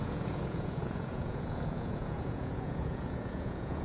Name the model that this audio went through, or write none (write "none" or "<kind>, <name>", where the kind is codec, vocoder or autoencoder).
vocoder, Vocos